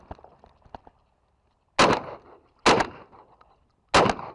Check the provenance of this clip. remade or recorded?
recorded